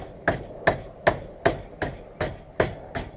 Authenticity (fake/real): real